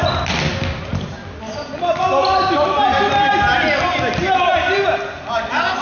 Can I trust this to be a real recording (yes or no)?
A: yes